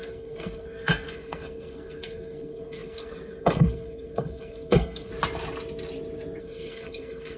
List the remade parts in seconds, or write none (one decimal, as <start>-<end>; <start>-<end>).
0.0-5.1; 6.4-7.4